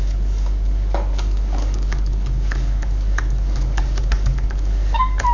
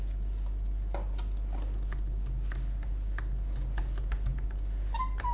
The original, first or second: second